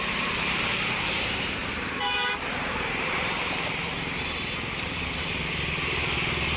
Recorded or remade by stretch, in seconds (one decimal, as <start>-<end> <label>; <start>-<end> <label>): 0.0-1.6 recorded; 1.6-5.6 remade; 5.6-6.6 recorded